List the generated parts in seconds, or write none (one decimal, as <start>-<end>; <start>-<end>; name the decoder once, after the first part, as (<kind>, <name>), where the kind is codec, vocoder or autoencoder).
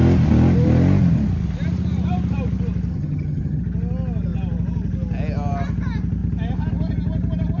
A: 2.9-3.6 (vocoder, HiFi-GAN)